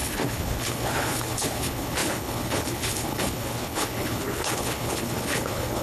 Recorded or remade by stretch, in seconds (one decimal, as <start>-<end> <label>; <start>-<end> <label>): 0.0-5.8 remade